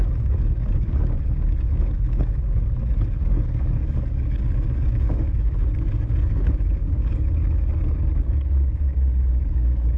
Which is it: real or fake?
fake